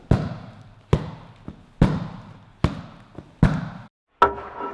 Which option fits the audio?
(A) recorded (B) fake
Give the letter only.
A